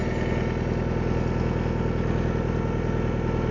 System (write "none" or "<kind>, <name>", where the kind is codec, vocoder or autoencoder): none